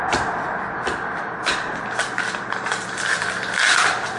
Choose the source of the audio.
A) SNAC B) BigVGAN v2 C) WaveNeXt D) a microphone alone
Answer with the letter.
B